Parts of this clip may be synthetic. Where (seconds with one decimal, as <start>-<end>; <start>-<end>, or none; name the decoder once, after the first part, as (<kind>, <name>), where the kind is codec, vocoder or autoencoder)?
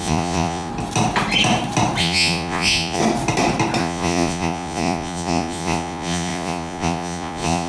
0.0-0.7 (vocoder, Vocos); 2.0-3.0; 3.8-7.7